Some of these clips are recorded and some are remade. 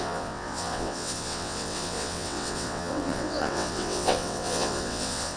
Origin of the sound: remade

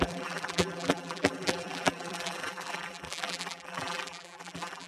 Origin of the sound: remade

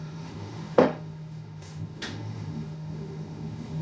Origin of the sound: remade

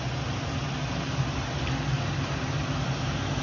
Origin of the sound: recorded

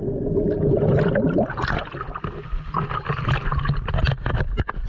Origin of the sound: recorded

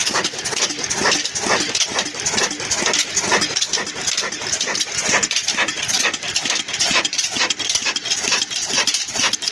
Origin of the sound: recorded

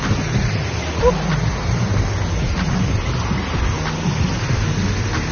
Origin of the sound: recorded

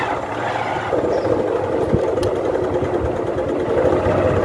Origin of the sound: recorded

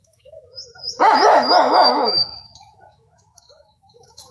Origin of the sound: remade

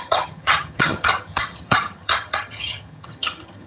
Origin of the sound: remade